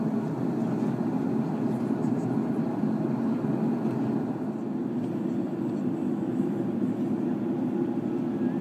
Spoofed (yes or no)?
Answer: no